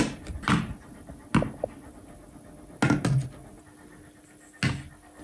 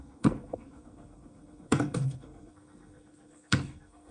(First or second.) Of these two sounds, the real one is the first